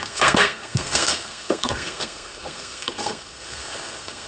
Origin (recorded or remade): remade